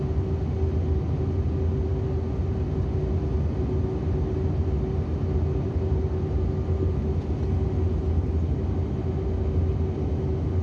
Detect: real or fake real